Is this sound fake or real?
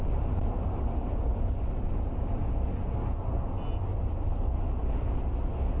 real